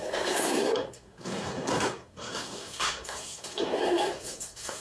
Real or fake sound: fake